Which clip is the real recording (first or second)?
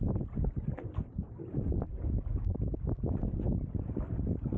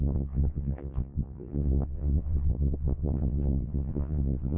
first